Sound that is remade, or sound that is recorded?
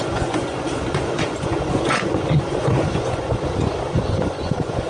remade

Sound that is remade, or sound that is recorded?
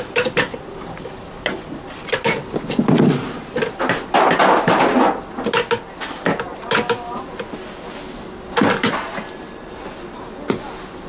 recorded